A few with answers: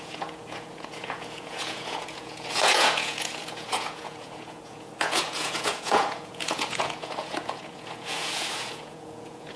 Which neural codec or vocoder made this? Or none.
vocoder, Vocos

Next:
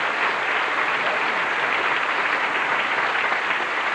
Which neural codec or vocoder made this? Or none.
none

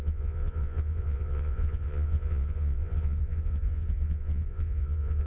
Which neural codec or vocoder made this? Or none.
vocoder, Vocos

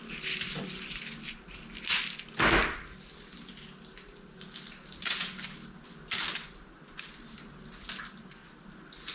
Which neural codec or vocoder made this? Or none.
none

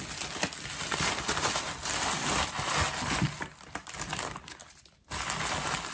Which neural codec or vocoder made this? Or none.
none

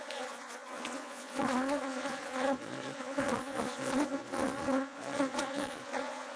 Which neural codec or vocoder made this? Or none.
vocoder, Vocos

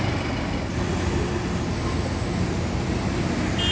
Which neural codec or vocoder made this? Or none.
none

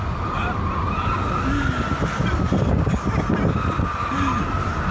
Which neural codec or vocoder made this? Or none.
none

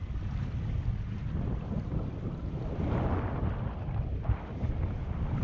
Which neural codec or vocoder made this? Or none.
none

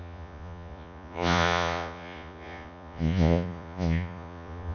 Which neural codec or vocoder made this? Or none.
vocoder, Vocos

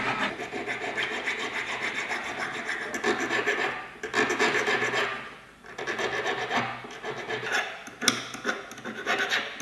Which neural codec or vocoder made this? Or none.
none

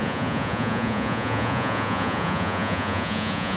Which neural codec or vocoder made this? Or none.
vocoder, Vocos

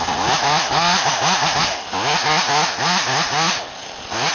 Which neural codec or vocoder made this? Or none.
none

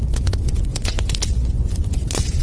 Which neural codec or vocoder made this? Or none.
vocoder, Vocos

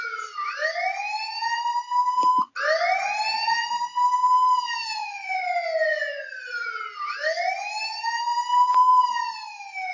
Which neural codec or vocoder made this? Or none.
none